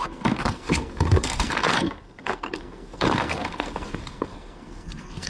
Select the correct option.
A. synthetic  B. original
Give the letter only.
A